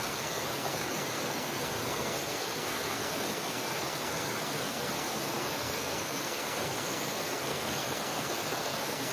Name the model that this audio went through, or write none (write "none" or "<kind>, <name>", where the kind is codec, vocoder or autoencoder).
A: codec, SNAC